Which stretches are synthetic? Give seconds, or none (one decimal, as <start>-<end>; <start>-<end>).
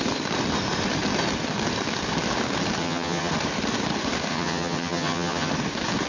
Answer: 2.8-3.3; 4.3-5.5